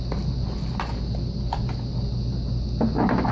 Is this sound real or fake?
real